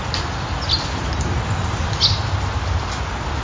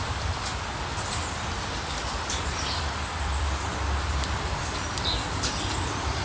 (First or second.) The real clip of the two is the first